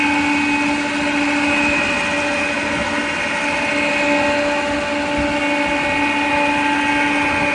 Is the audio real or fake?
real